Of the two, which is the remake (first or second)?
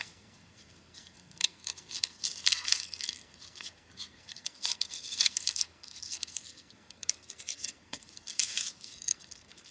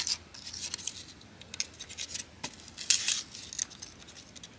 first